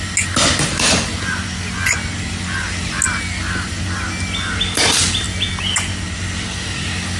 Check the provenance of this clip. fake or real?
real